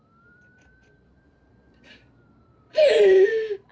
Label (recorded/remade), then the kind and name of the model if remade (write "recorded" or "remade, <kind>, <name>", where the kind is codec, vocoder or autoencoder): remade, vocoder, BigVGAN v2